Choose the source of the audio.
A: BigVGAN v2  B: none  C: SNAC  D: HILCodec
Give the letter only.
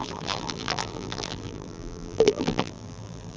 A